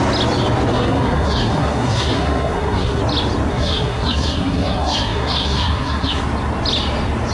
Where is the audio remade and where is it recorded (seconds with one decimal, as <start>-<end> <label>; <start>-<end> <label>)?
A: 0.0-0.7 recorded; 0.7-3.0 remade; 3.0-3.5 recorded; 3.5-6.2 remade; 6.2-7.3 recorded